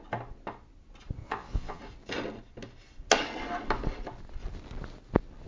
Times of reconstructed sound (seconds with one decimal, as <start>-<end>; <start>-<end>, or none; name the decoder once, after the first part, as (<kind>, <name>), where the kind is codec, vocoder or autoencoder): 1.2-1.8 (vocoder, Vocos)